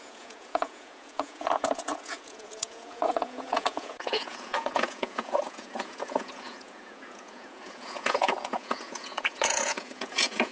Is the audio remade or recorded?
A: remade